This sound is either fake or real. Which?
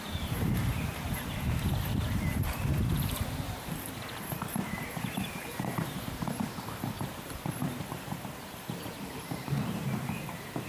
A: fake